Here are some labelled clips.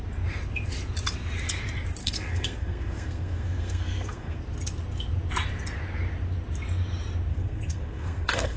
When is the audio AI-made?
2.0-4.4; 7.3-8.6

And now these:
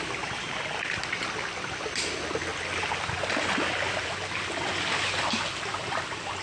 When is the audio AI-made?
none

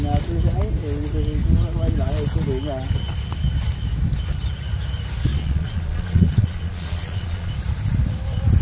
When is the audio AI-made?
5.3-7.5

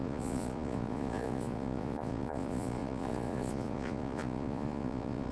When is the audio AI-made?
0.0-5.3

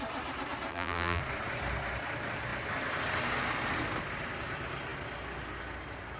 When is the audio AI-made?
0.7-1.2